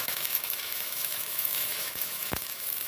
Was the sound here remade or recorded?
remade